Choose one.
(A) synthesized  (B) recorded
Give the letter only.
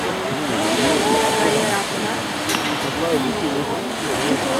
B